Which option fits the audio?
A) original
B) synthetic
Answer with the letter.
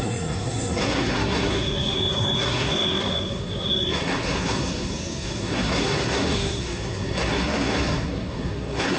B